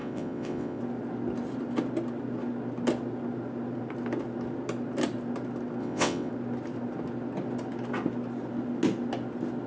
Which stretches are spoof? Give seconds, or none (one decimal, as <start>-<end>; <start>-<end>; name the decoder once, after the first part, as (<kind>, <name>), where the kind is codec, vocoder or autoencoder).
0.0-0.8 (vocoder, WaveNeXt); 5.8-6.3